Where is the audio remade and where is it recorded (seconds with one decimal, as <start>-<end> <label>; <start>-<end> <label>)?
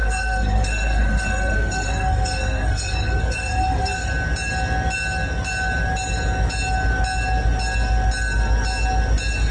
0.0-4.1 remade; 4.1-9.5 recorded